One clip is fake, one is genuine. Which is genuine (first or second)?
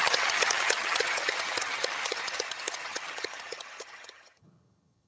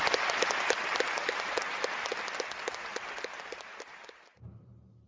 second